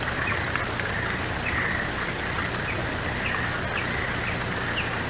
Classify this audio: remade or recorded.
recorded